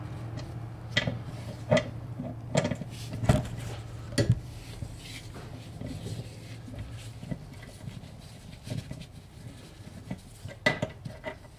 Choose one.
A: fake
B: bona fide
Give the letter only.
B